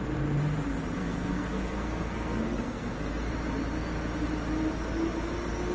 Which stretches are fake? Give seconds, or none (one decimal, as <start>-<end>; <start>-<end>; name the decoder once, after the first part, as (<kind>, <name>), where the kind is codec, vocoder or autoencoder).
1.0-3.3 (codec, SNAC)